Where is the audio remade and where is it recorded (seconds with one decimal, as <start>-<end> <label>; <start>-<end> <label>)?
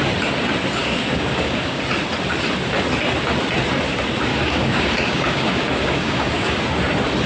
0.0-0.8 recorded; 0.8-1.8 remade; 1.8-4.3 recorded; 4.3-6.6 remade; 6.6-7.3 recorded